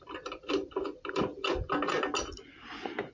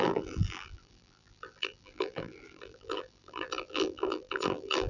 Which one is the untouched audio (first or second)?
first